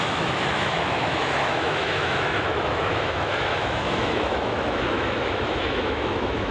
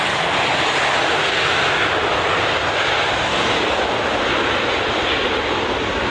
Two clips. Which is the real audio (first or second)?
second